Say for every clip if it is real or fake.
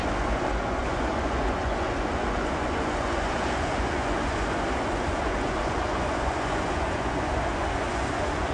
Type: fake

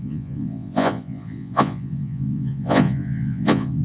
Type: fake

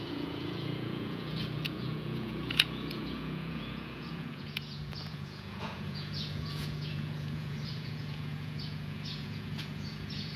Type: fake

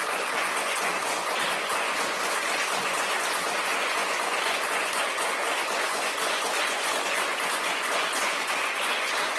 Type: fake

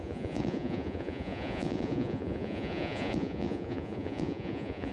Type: fake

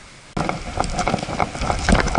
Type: real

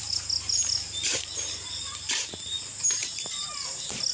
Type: real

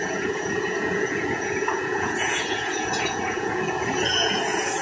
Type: fake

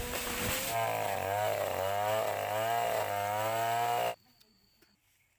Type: real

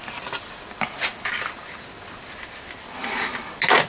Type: real